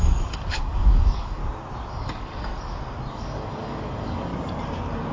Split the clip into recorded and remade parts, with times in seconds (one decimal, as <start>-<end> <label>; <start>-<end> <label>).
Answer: 0.0-1.4 remade; 1.4-2.0 recorded; 2.0-2.5 remade; 2.5-3.1 recorded; 3.1-4.3 remade; 4.3-5.1 recorded